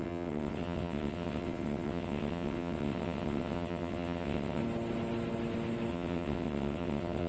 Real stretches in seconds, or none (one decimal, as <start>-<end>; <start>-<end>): 4.6-5.9